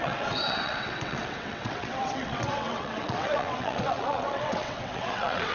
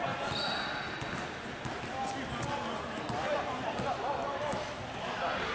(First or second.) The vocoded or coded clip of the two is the first